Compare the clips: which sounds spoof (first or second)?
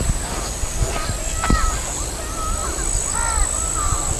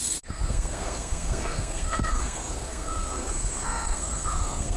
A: second